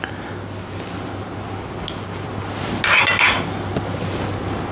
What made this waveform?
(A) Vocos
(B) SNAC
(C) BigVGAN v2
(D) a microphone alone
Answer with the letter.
D